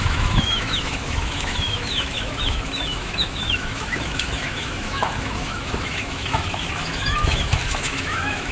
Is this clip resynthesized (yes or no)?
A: yes